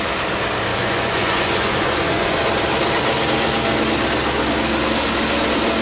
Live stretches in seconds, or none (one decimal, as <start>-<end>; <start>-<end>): 0.0-0.7; 2.4-5.8